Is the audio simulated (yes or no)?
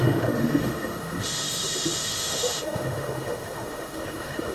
yes